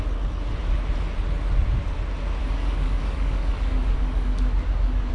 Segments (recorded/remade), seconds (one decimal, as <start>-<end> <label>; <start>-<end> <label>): 0.0-2.4 recorded; 2.4-5.1 remade